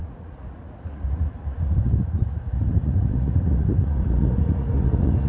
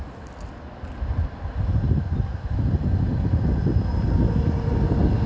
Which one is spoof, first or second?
first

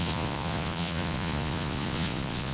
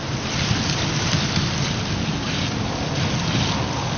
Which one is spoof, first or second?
first